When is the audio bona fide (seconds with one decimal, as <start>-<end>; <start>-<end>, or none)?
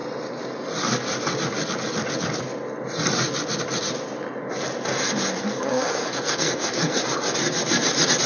0.0-5.4; 7.0-8.3